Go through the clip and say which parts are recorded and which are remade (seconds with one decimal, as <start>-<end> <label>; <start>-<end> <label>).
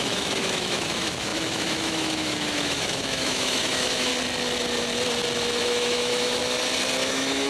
0.0-4.1 remade; 4.1-5.6 recorded; 5.6-6.4 remade; 6.4-7.1 recorded; 7.1-7.5 remade